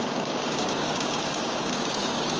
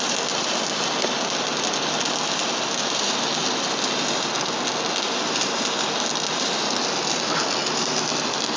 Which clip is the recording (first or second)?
second